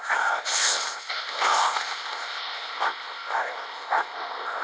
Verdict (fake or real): fake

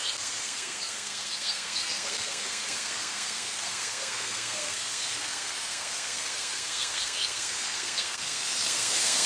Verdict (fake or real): fake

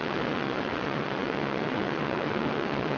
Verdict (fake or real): fake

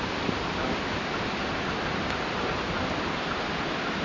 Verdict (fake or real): fake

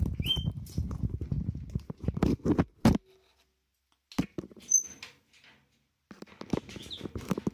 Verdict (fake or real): real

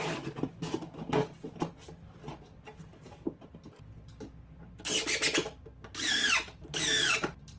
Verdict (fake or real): real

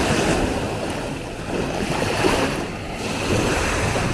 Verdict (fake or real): real